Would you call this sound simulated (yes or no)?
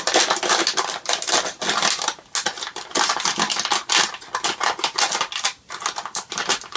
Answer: no